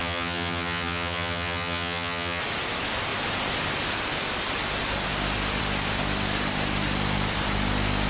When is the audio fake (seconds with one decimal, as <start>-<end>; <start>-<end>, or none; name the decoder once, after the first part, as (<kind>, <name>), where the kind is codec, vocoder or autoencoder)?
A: 0.0-2.4 (vocoder, HiFi-GAN)